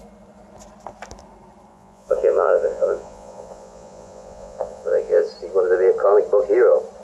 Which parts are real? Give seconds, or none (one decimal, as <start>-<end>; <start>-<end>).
0.0-1.7; 5.3-7.0